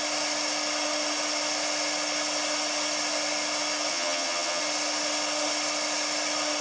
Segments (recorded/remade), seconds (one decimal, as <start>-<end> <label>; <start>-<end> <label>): 0.0-3.9 recorded; 3.9-4.6 remade; 4.6-6.6 recorded